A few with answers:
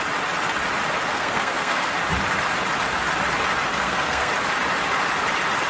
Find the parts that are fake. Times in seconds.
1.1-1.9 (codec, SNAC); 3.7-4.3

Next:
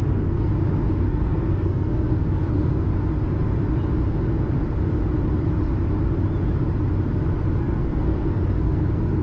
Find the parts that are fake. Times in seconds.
0.0-0.5 (codec, SNAC); 1.0-2.9; 7.6-9.2

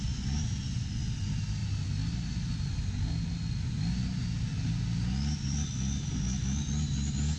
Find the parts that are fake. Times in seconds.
none

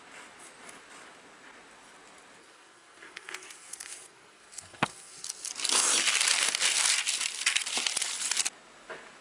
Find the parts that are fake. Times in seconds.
2.4-5.5 (codec, SNAC)

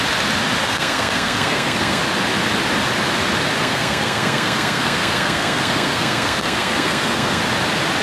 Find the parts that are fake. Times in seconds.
0.7-2.0 (codec, SNAC); 3.6-7.4

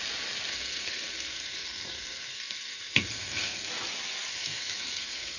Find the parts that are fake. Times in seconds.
0.5-3.7 (codec, SNAC); 4.3-5.4